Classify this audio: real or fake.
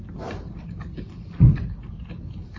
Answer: real